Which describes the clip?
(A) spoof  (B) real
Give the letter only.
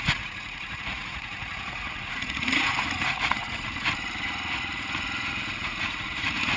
A